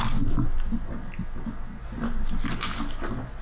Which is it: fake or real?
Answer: real